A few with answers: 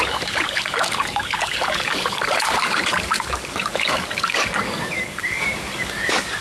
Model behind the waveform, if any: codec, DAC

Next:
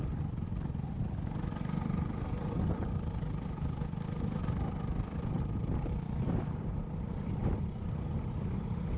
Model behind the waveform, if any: vocoder, BigVGAN v2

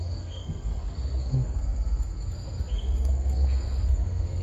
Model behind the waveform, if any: codec, SNAC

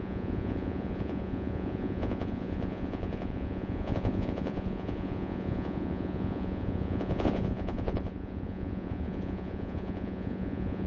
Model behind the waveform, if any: vocoder, Vocos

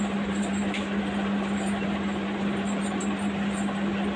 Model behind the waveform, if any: none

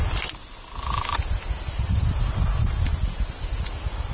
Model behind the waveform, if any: none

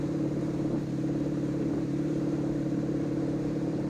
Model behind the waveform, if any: vocoder, BigVGAN v2